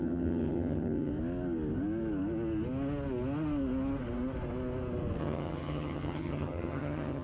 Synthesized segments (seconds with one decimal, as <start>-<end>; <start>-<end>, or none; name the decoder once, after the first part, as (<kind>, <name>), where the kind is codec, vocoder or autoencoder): 0.0-1.1 (vocoder, HiFi-GAN); 5.2-7.2

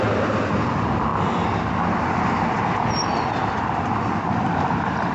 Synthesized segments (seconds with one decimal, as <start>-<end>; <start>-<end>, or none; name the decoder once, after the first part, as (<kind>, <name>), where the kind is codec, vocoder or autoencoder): none